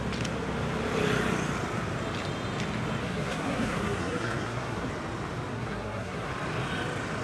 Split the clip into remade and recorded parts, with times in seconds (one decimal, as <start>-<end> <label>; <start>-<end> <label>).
0.0-3.0 recorded; 3.0-4.9 remade; 4.9-5.5 recorded; 5.5-6.3 remade; 6.3-7.2 recorded